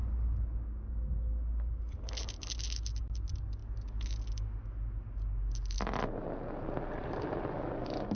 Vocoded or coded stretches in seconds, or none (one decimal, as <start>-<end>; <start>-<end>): none

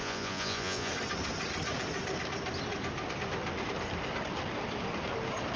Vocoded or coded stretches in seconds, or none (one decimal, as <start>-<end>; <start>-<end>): 0.0-0.9

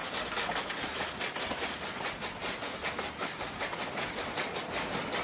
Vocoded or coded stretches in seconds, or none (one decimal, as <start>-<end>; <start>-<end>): none

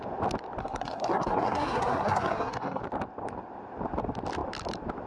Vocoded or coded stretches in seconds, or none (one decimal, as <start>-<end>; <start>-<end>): 0.6-2.8